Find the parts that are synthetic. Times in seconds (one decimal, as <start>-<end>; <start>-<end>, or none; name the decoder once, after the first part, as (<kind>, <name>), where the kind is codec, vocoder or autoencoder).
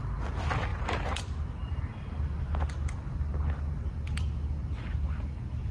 none